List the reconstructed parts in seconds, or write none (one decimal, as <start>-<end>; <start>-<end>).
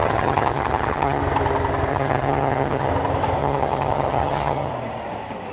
0.0-1.2; 1.9-2.9; 3.4-4.7